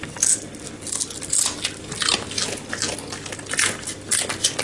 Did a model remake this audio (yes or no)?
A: no